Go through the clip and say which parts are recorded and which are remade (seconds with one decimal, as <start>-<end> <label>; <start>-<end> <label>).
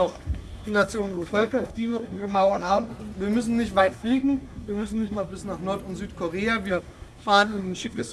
0.0-2.9 remade; 2.9-3.8 recorded; 3.8-5.3 remade; 5.3-6.7 recorded; 6.7-8.1 remade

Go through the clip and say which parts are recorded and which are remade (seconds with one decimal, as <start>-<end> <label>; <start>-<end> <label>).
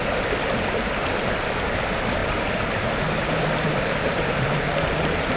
0.0-2.2 recorded; 2.2-5.4 remade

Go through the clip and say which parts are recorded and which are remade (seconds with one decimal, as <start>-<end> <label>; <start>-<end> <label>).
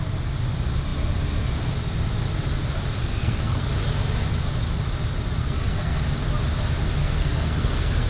0.0-3.0 recorded; 3.0-3.7 remade; 3.7-5.4 recorded; 5.4-6.0 remade; 6.0-7.0 recorded; 7.0-8.1 remade